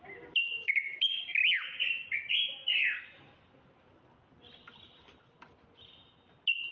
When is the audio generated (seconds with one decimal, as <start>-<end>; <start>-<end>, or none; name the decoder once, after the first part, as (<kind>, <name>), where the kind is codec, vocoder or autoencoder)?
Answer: none